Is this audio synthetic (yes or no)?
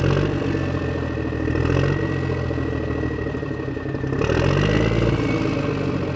no